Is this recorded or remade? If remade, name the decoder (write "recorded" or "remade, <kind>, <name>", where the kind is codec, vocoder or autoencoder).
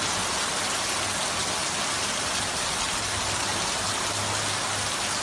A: recorded